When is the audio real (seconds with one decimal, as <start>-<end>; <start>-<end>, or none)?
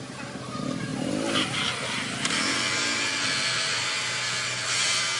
0.0-5.2